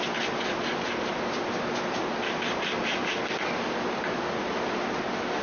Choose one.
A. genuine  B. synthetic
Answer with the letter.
A